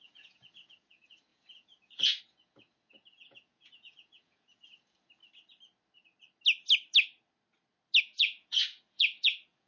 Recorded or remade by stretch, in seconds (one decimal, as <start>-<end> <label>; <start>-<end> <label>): 0.0-5.2 remade; 5.2-8.0 recorded; 8.0-9.7 remade